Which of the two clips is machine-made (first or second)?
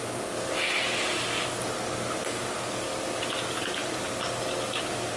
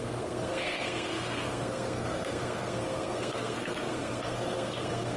second